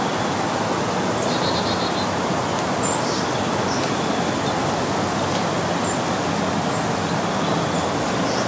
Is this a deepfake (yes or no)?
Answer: no